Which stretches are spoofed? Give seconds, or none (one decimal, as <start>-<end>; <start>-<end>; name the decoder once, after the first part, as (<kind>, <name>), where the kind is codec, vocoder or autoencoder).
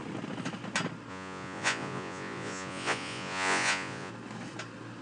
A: 1.1-4.1 (vocoder, Vocos)